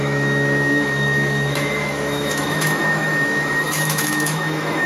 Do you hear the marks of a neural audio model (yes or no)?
yes